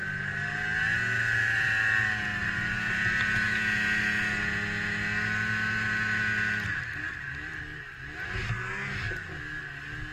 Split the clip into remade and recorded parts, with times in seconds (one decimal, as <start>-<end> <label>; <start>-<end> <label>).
0.0-10.1 recorded